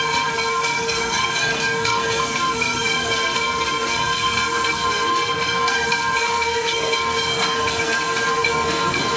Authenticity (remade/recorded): remade